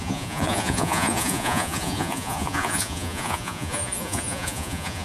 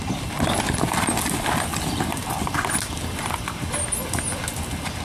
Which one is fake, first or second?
first